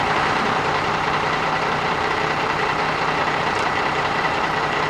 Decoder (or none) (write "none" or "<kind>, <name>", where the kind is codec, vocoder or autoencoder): vocoder, BigVGAN v2